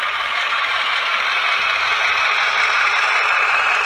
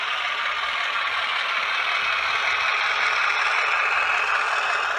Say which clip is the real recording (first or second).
second